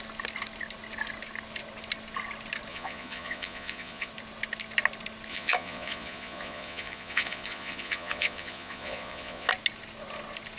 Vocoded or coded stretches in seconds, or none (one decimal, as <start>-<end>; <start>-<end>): 2.7-4.1; 5.3-9.5